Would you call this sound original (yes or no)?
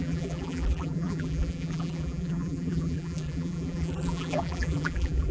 no